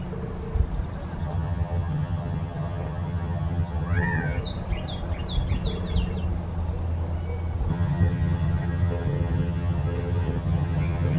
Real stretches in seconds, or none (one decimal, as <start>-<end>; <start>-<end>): 0.0-1.2; 4.4-7.7